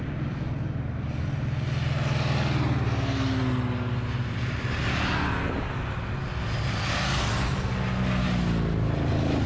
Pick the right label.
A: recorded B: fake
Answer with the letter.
A